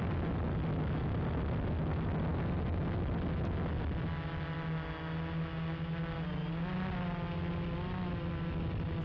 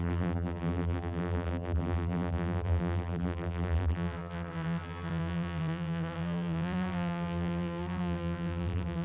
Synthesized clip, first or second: second